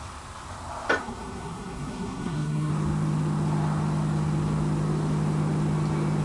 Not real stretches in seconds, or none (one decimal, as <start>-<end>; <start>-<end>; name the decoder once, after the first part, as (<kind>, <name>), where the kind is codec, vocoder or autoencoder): 1.0-2.7 (codec, SNAC)